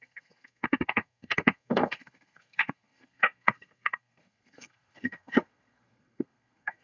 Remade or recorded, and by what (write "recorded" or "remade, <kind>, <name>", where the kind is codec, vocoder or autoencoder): remade, codec, SNAC